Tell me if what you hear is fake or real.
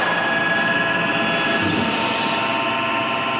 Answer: real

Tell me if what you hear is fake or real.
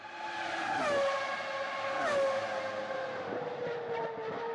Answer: real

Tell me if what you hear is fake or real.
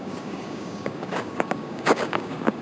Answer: fake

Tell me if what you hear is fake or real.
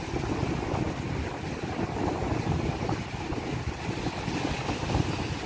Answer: real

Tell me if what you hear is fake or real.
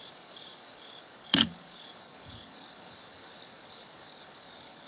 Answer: fake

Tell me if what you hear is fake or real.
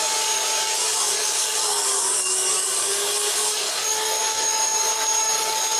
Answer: fake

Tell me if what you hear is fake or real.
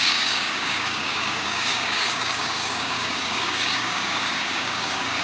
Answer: fake